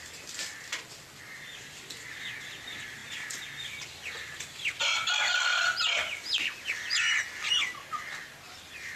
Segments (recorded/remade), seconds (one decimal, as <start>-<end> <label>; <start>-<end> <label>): 0.0-9.0 recorded